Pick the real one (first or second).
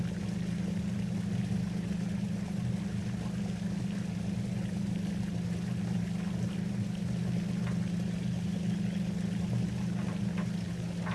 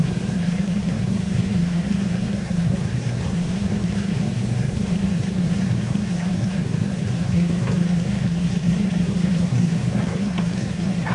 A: first